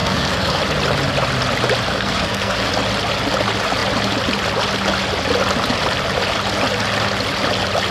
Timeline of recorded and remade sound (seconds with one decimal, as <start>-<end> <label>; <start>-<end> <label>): 0.0-0.6 remade; 0.6-1.9 recorded; 1.9-2.7 remade; 2.7-7.9 recorded